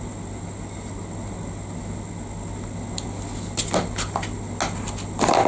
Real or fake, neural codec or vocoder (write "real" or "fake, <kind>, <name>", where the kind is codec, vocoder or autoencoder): real